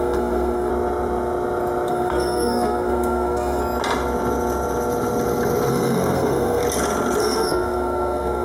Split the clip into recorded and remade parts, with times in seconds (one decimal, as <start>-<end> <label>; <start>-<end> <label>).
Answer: 0.0-0.7 remade; 0.7-1.9 recorded; 1.9-3.6 remade; 3.6-5.7 recorded; 5.7-6.6 remade; 6.6-7.2 recorded; 7.2-8.4 remade

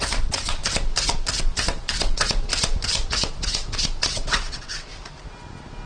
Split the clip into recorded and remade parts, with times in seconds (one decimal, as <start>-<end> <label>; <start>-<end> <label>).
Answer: 0.0-0.6 remade; 0.6-1.4 recorded; 1.4-2.5 remade; 2.5-3.1 recorded; 3.1-4.9 remade; 4.9-5.9 recorded

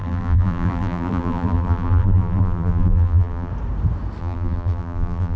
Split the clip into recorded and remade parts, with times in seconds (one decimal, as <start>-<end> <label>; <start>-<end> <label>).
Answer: 0.0-3.5 remade; 3.5-4.2 recorded; 4.2-5.4 remade

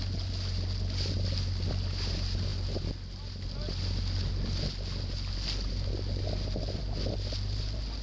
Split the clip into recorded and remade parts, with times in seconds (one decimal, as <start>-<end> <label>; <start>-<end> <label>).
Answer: 0.0-8.0 recorded

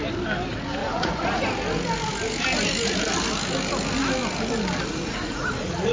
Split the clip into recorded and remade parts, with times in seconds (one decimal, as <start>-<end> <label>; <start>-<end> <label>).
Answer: 0.0-0.8 recorded; 0.8-1.4 remade; 1.4-4.9 recorded; 4.9-5.9 remade

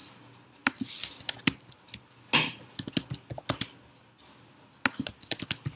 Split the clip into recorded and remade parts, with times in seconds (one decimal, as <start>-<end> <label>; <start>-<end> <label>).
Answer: 0.0-5.8 recorded

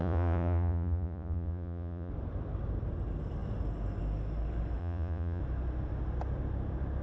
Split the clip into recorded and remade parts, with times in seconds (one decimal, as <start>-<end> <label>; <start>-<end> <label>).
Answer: 0.0-2.1 remade; 2.1-4.8 recorded; 4.8-5.4 remade; 5.4-7.0 recorded

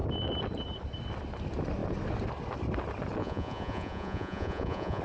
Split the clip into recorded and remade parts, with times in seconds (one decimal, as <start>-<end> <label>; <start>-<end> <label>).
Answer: 0.0-3.2 recorded; 3.2-5.0 remade